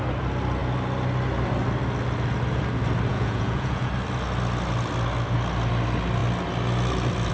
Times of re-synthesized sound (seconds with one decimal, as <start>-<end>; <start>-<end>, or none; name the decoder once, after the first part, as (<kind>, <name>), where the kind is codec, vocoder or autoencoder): 3.1-3.9 (vocoder, Vocos)